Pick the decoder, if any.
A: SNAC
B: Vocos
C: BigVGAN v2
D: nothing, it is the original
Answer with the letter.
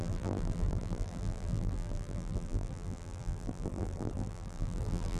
C